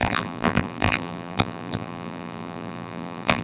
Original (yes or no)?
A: no